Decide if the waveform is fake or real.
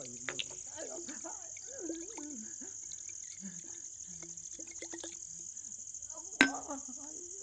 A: real